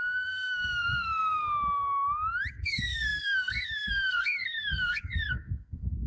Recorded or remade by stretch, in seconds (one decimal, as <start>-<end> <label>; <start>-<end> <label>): 0.0-1.4 remade; 1.4-2.5 recorded; 2.5-6.1 remade